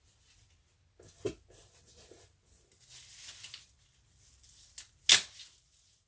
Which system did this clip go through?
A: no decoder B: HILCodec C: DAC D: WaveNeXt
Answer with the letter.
A